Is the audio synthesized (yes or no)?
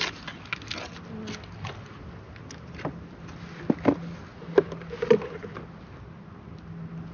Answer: no